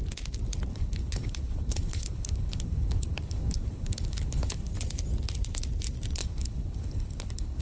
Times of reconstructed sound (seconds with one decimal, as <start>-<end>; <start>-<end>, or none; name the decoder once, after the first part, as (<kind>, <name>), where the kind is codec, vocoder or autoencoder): 0.7-4.7 (codec, HILCodec); 6.2-7.6